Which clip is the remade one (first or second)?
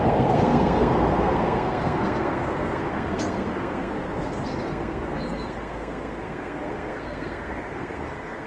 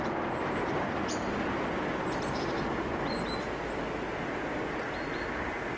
first